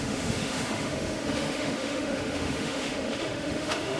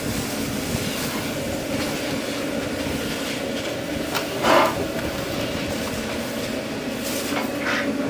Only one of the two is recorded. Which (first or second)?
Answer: second